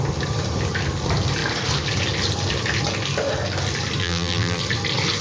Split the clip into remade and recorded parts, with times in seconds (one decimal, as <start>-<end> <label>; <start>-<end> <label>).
0.0-4.0 recorded; 4.0-4.6 remade; 4.6-5.2 recorded